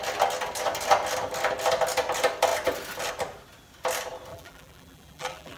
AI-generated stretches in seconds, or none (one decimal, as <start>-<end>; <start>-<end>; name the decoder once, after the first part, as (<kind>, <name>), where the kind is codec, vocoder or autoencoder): 4.3-5.6 (vocoder, BigVGAN v2)